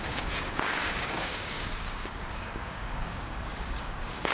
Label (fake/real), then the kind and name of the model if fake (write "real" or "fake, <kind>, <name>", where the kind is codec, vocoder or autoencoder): fake, codec, DAC